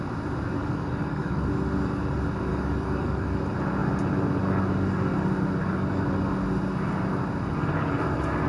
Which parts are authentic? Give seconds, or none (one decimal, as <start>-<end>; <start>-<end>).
0.0-0.6; 1.5-2.5; 3.4-8.5